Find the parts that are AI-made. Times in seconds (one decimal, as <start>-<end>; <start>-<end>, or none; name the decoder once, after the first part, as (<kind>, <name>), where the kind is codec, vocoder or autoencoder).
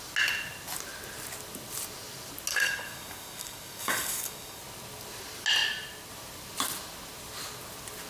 2.5-4.6 (codec, DAC)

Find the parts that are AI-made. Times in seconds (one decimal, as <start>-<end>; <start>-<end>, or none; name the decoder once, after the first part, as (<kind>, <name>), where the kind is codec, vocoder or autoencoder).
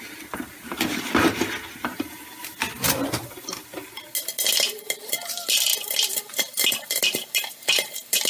none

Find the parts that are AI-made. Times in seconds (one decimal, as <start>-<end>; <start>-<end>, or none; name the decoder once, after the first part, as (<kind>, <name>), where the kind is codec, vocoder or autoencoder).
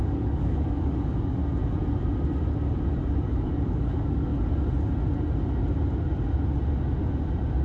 0.0-1.4 (codec, DAC); 3.2-4.3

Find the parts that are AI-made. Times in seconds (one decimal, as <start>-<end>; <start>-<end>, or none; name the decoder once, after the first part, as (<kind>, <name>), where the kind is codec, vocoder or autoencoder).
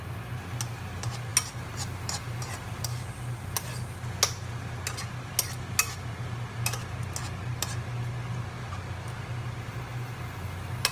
none